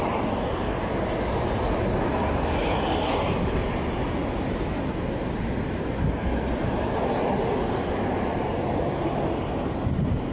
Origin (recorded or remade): recorded